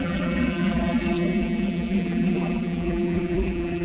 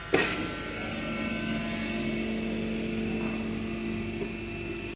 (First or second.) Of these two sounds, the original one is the second